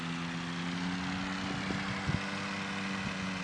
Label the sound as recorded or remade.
recorded